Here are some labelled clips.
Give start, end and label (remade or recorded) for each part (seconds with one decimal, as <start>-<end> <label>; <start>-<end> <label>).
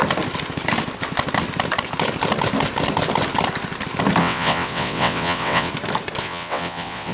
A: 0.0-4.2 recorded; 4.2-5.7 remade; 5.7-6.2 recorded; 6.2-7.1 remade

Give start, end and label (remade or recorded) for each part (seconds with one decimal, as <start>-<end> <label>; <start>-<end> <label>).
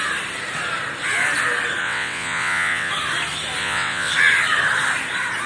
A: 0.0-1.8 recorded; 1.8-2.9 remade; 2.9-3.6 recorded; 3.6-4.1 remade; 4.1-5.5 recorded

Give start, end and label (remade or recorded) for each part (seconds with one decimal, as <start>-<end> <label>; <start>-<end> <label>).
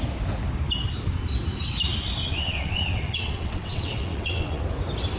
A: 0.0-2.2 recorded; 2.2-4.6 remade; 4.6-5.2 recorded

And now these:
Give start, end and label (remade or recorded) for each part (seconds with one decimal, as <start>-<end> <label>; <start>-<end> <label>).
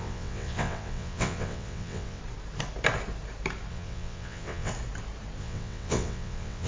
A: 0.0-2.2 remade; 2.2-3.7 recorded; 3.7-4.7 remade; 4.7-5.4 recorded; 5.4-6.7 remade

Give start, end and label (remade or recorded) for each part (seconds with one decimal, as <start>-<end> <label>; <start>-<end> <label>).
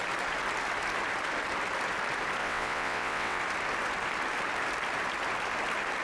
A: 0.0-2.4 recorded; 2.4-3.4 remade; 3.4-6.0 recorded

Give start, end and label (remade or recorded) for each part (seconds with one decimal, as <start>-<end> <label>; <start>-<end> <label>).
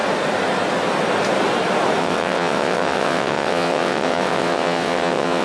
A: 0.0-2.0 recorded; 2.0-5.4 remade